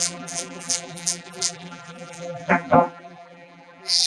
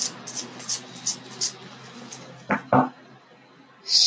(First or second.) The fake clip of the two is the first